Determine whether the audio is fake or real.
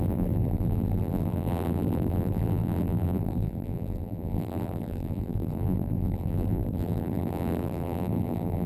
fake